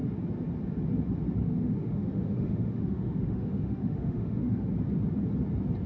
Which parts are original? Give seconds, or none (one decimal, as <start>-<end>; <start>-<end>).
0.0-1.4; 4.7-5.9